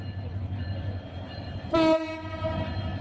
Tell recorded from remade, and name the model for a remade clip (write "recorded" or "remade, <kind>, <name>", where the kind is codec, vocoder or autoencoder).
recorded